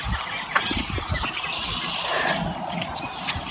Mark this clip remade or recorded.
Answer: recorded